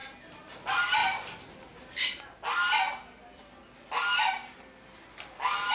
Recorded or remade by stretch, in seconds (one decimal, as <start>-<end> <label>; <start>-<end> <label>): 0.0-5.7 recorded